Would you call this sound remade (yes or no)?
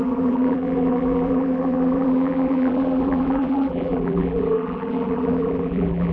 yes